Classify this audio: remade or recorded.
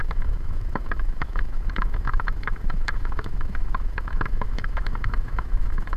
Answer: remade